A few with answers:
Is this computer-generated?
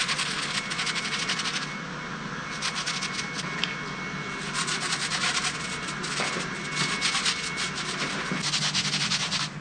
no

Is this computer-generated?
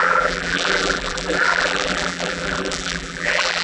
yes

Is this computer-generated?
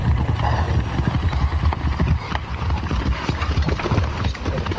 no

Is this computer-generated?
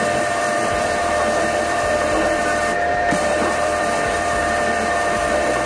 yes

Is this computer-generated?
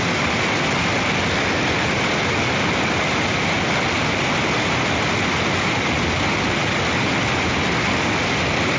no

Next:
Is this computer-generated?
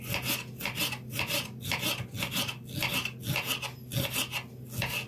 no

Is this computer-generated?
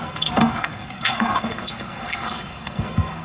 yes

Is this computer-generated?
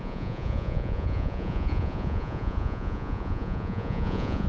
yes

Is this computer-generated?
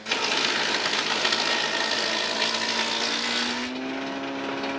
no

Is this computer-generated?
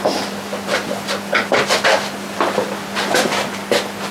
no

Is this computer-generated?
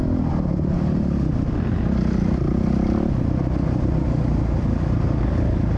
no